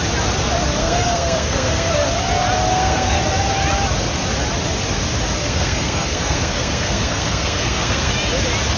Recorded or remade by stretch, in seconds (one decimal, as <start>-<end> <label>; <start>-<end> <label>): 0.0-0.8 recorded; 0.8-1.9 remade; 1.9-2.7 recorded; 2.7-3.2 remade; 3.2-5.4 recorded; 5.4-8.1 remade; 8.1-8.8 recorded